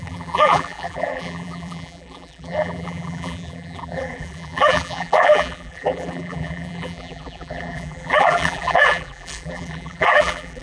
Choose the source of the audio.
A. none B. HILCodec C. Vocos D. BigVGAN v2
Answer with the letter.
D